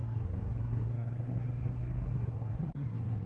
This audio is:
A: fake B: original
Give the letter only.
A